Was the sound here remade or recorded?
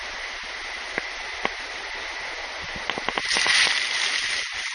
recorded